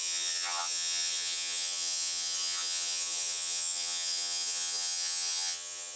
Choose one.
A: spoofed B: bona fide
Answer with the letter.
A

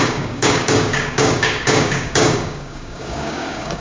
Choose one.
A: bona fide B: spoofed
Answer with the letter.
B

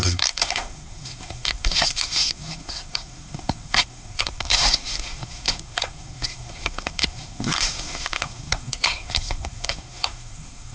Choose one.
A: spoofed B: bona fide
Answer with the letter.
A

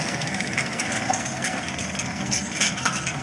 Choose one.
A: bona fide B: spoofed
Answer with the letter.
B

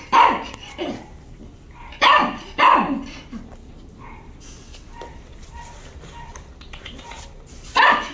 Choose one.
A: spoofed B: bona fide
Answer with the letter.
A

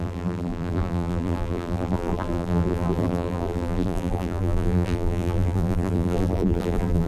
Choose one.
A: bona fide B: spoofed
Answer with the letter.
B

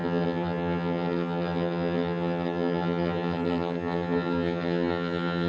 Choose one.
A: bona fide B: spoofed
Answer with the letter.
B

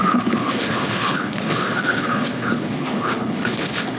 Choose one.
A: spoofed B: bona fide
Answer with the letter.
A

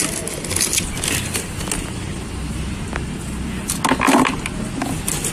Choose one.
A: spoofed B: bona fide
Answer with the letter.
B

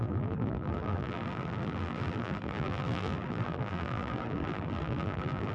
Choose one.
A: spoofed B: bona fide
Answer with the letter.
A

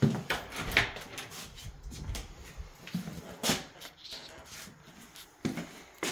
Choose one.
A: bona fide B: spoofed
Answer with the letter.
A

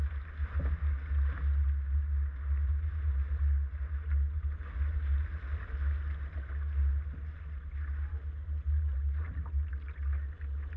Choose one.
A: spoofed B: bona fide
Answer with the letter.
B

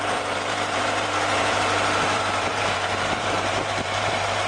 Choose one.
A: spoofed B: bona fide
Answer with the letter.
A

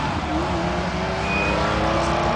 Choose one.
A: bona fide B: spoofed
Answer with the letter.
A